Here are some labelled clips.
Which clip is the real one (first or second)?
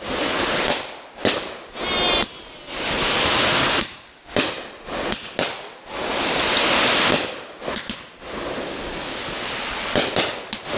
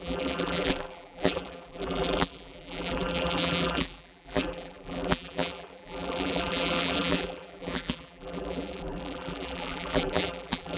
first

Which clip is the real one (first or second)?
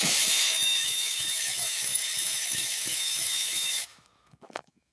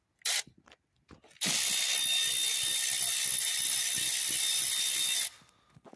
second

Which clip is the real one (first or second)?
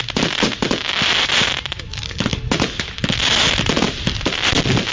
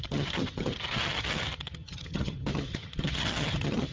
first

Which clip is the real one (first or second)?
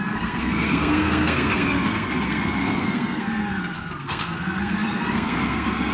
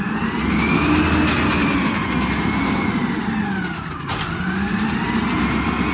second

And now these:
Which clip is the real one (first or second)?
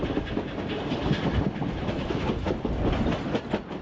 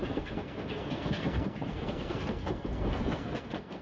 first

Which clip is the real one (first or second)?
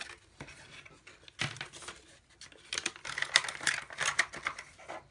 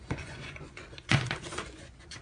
first